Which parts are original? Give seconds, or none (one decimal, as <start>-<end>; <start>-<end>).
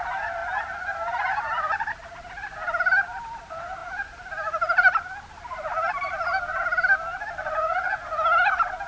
0.0-8.9